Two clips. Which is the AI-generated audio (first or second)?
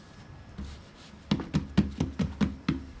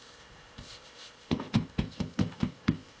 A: second